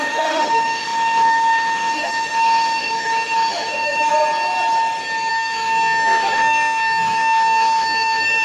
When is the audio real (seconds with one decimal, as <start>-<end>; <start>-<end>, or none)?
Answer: 4.1-5.3